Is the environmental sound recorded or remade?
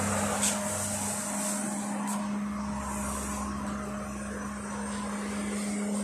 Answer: recorded